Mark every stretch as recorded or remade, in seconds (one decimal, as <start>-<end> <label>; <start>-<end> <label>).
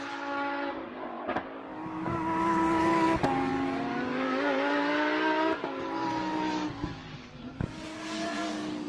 0.0-8.9 remade